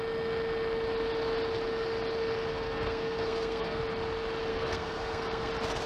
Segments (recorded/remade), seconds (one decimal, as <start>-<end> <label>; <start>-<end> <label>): 0.0-2.5 recorded; 2.5-3.8 remade; 3.8-4.5 recorded; 4.5-5.5 remade; 5.5-5.9 recorded

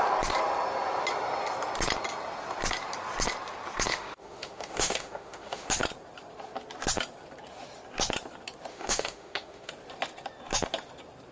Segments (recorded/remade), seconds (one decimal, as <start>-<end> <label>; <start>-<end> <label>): 0.0-3.9 recorded; 3.9-5.7 remade; 5.7-8.7 recorded; 8.7-9.7 remade; 9.7-11.3 recorded

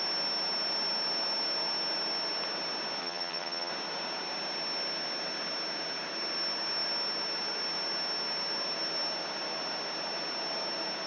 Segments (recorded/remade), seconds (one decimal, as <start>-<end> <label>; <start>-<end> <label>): 0.0-3.0 recorded; 3.0-3.7 remade; 3.7-11.1 recorded

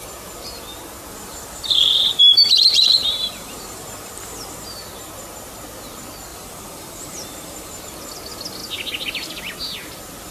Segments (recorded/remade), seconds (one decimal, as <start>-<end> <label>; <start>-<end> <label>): 0.0-1.1 recorded; 1.1-4.8 remade; 4.8-6.3 recorded; 6.3-7.8 remade; 7.8-10.3 recorded

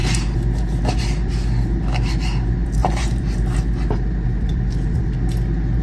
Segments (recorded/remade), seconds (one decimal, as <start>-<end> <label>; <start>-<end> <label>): 0.0-2.8 recorded; 2.8-3.6 remade; 3.6-5.8 recorded